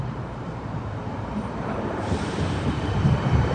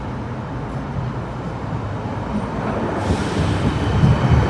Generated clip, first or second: first